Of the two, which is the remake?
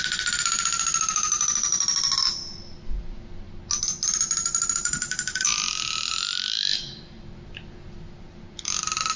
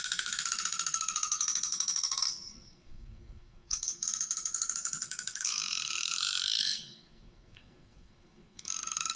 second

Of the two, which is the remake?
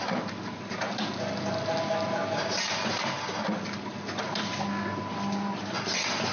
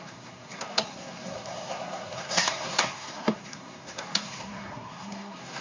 second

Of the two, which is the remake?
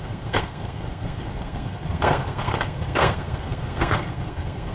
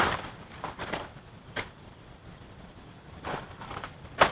first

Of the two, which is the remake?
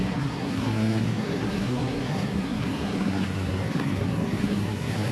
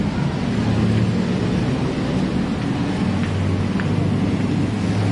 first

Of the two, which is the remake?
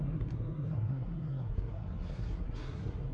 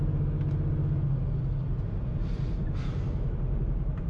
first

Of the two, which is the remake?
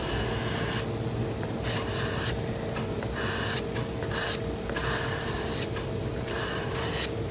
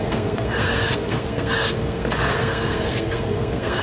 second